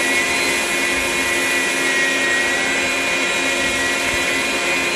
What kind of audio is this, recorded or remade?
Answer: recorded